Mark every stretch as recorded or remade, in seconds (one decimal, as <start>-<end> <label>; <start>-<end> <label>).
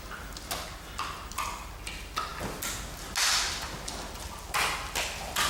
0.0-5.5 recorded